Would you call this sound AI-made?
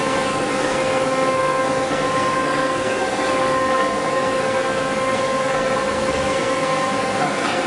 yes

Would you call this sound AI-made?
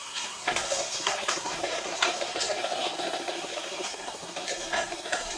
yes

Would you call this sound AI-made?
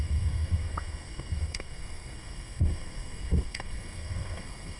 yes